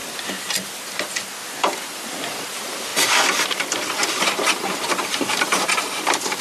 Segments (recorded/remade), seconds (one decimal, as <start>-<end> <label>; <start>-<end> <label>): 0.0-2.9 remade; 2.9-3.5 recorded; 3.5-4.0 remade; 4.0-4.7 recorded; 4.7-6.4 remade